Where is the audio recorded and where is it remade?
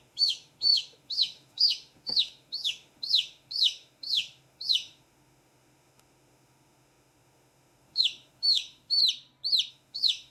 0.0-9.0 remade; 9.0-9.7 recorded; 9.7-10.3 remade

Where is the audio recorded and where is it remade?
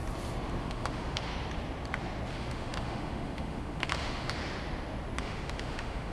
0.0-0.6 recorded; 0.6-1.3 remade; 1.3-2.3 recorded; 2.3-4.4 remade; 4.4-5.2 recorded; 5.2-6.1 remade